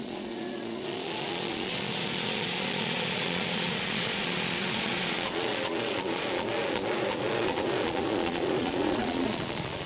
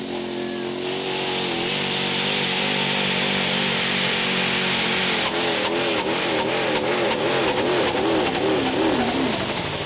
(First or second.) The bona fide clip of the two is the second